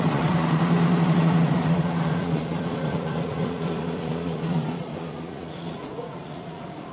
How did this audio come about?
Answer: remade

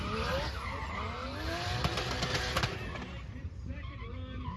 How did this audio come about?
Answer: recorded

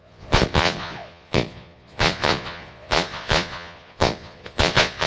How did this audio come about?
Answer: remade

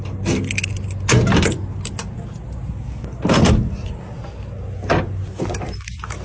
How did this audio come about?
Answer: recorded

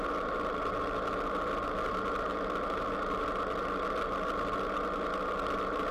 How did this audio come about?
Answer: recorded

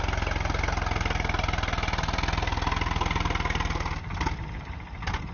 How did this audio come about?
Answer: recorded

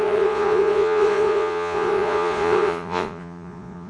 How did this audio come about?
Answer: remade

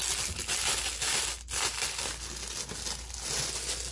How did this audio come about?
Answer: recorded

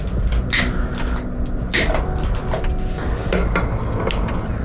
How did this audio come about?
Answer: recorded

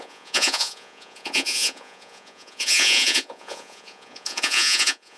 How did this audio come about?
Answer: remade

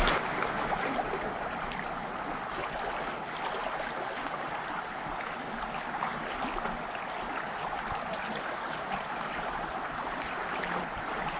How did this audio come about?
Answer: recorded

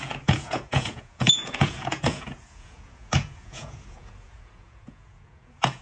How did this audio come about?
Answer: remade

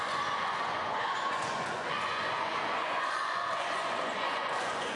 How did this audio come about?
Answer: remade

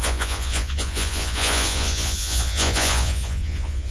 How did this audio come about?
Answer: remade